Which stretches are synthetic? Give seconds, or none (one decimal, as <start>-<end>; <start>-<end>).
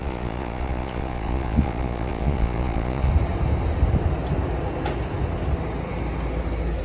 0.0-3.1